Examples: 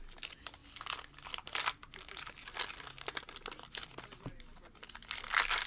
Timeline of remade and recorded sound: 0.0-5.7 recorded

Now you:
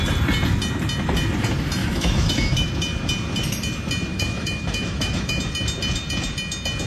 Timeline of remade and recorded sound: 0.0-1.8 recorded; 1.8-2.7 remade; 2.7-4.1 recorded; 4.1-5.4 remade; 5.4-6.9 recorded

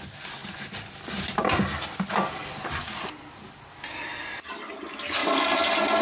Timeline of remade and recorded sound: 0.0-6.0 recorded

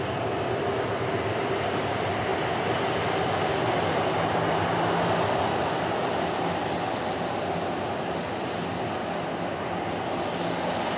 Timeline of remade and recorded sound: 0.0-11.0 recorded

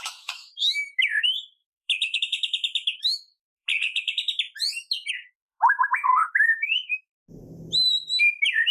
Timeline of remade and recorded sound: 0.0-3.7 remade; 3.7-5.1 recorded; 5.1-7.1 remade; 7.1-8.7 recorded